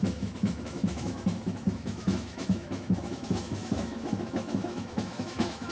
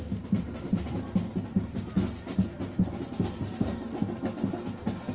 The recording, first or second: second